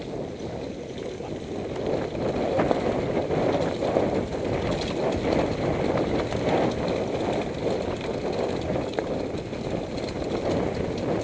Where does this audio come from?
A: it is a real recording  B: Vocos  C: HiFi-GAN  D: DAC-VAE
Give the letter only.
A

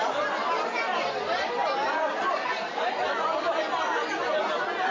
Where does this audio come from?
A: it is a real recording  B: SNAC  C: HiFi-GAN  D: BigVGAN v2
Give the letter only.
A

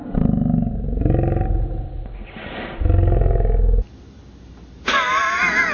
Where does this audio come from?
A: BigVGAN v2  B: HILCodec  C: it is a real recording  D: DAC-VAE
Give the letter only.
C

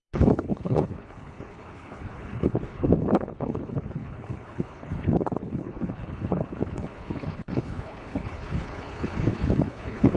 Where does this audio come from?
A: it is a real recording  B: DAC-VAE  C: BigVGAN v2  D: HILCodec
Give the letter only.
D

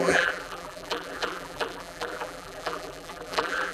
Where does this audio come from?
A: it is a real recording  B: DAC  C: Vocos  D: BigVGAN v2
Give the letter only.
D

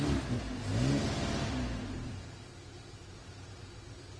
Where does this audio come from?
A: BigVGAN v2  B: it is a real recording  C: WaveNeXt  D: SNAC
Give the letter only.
B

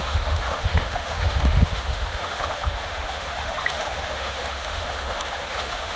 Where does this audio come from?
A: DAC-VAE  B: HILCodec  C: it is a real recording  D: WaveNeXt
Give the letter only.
A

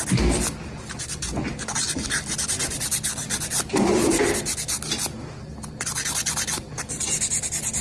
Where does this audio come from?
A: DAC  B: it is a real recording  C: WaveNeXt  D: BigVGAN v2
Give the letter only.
B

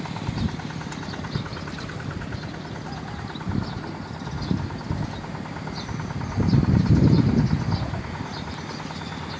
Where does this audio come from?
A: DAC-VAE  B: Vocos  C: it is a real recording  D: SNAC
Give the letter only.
C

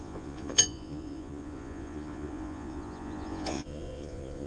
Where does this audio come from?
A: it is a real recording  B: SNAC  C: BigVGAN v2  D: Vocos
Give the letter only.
D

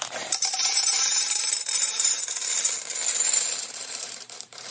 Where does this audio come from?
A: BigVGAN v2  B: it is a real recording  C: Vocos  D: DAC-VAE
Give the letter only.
A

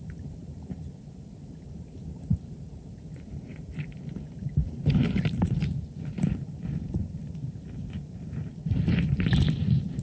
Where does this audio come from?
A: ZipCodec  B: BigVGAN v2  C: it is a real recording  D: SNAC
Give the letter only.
B